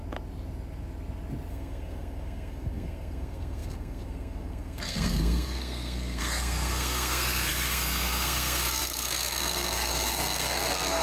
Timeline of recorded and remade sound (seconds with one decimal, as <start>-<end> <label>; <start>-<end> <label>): 0.0-1.5 recorded; 1.5-11.0 remade